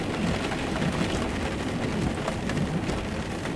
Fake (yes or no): no